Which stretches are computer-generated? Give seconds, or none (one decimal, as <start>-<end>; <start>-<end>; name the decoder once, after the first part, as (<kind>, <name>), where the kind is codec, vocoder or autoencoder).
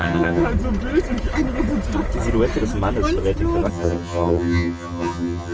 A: 0.0-0.4 (vocoder, HiFi-GAN); 3.7-5.5